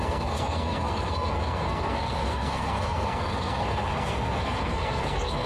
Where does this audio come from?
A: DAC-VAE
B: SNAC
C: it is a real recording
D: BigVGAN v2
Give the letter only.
B